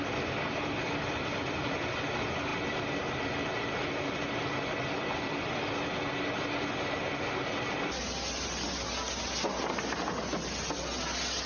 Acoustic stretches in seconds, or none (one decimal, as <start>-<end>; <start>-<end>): 0.0-11.5